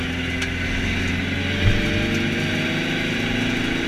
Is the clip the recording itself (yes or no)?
yes